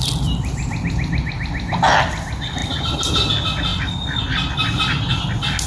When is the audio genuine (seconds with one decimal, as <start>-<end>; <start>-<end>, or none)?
0.0-5.7